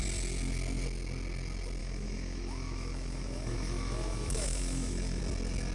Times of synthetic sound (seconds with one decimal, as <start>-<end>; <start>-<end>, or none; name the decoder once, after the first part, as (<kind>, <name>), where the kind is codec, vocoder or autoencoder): 1.8-5.2 (autoencoder, DAC-VAE)